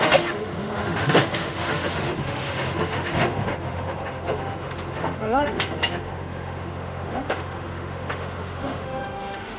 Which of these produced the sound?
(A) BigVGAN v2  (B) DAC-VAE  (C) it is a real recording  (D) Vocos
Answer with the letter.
B